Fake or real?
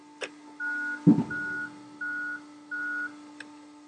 real